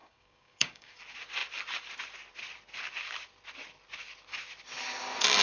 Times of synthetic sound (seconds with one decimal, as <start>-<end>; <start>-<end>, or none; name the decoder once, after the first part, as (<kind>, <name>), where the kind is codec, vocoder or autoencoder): 0.0-1.0 (codec, DAC)